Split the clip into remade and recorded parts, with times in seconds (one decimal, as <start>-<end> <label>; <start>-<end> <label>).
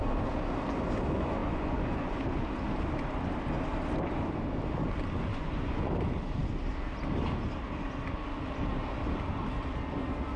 0.0-1.4 recorded; 1.4-2.2 remade; 2.2-5.3 recorded; 5.3-5.9 remade; 5.9-10.4 recorded